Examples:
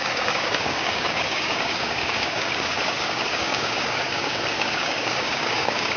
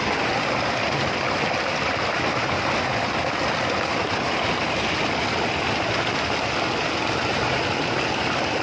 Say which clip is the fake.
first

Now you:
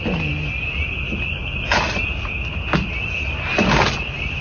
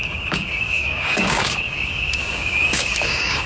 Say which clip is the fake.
second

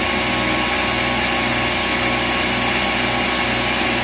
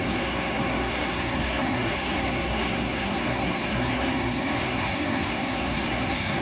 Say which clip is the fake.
second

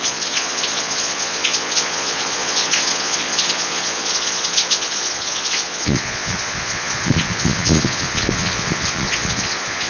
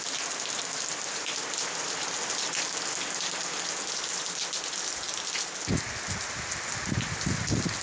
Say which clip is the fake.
first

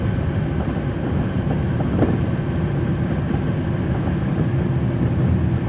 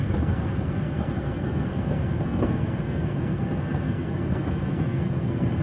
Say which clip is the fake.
second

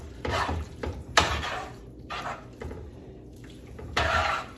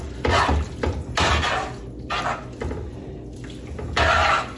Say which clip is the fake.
first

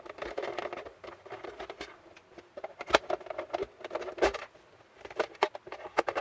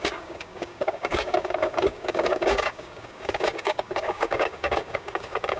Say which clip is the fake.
second